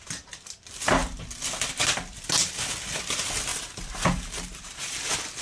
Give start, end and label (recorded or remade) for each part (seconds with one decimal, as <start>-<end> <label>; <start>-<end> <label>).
0.0-3.5 recorded; 3.5-5.4 remade